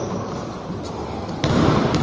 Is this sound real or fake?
fake